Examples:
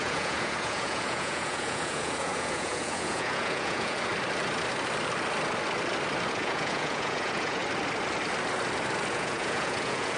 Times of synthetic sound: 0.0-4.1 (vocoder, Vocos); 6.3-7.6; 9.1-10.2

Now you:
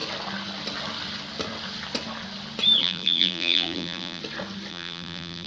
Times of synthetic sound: 2.8-4.2 (vocoder, BigVGAN v2); 4.7-5.5